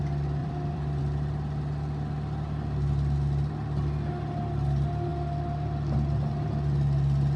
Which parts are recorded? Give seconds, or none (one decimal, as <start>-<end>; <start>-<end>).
0.0-0.4; 1.0-7.4